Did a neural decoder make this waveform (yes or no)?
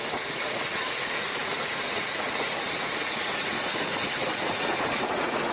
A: yes